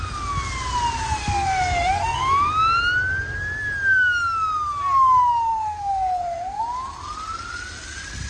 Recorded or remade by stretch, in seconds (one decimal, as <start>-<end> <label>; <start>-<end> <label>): 0.0-1.2 recorded; 1.2-2.5 remade; 2.5-5.5 recorded; 5.5-6.6 remade; 6.6-8.3 recorded